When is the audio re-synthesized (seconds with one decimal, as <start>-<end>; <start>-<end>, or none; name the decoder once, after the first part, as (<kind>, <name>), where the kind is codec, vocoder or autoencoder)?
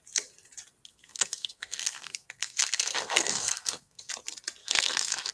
0.9-4.1 (codec, SNAC); 4.6-5.3